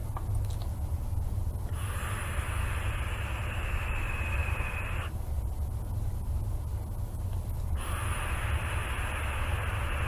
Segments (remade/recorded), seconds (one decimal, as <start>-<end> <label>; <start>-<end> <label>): 0.0-10.1 recorded